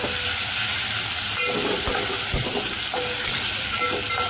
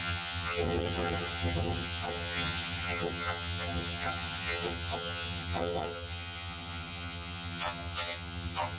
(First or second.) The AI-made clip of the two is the second